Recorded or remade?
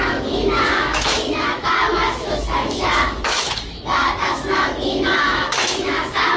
remade